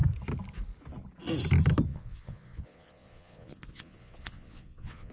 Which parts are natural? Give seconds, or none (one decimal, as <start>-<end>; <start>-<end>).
0.0-1.9